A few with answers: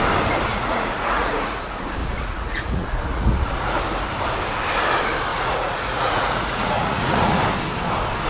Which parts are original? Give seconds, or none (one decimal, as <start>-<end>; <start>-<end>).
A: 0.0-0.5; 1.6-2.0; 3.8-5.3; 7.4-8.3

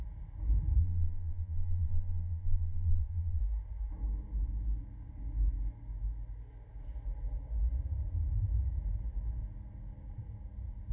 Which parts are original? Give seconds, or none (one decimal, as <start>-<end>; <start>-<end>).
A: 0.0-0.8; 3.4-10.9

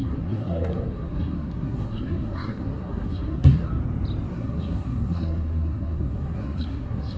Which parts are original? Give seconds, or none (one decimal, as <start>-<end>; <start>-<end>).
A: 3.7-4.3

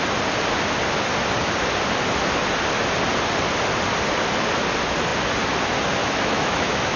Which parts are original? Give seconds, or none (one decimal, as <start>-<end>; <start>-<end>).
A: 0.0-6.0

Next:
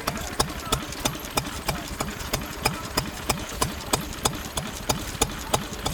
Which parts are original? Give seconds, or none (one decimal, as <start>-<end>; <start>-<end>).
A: 0.0-2.1; 3.8-5.9

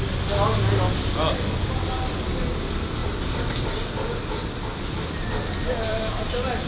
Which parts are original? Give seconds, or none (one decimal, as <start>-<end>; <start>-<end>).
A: 0.0-6.7

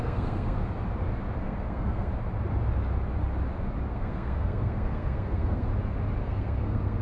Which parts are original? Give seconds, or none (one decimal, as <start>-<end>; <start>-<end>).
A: 0.6-1.4; 2.1-3.9; 5.7-6.2

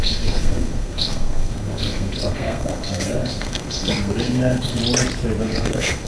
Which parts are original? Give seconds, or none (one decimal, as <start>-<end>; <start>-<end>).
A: 4.8-5.4